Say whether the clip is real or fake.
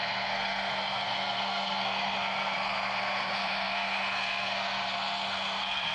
fake